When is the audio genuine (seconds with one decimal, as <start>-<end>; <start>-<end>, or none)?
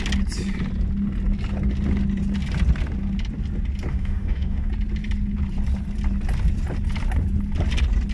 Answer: 0.0-3.9; 4.7-8.1